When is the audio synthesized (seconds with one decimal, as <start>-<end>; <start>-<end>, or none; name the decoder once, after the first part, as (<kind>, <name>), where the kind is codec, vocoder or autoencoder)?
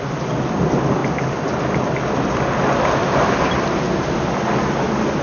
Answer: none